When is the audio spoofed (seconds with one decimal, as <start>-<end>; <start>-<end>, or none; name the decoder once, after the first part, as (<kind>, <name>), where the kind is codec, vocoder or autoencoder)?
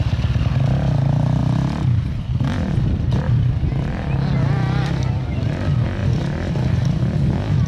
1.4-3.1 (vocoder, BigVGAN v2)